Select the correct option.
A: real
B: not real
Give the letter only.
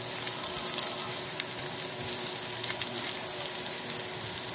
A